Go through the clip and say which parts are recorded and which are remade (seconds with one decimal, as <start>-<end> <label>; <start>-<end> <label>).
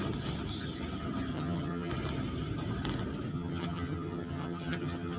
0.0-1.3 recorded; 1.3-1.9 remade; 1.9-3.3 recorded; 3.3-5.2 remade